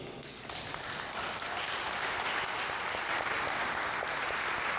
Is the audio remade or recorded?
recorded